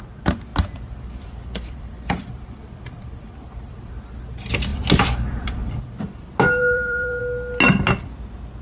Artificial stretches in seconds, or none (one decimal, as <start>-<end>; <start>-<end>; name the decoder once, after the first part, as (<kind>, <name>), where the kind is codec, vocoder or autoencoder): 0.5-3.9 (vocoder, BigVGAN v2); 4.7-7.2